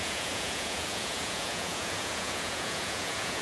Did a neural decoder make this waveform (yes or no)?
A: yes